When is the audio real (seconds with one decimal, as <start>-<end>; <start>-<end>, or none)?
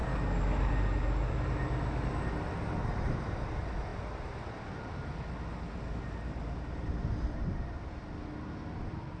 0.0-9.2